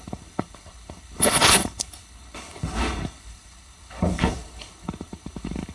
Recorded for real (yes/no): no